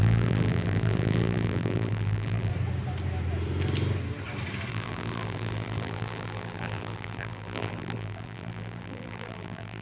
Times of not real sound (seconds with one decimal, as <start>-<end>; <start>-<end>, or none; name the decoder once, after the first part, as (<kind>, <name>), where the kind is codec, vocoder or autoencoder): 0.0-2.5 (vocoder, BigVGAN v2); 4.7-9.8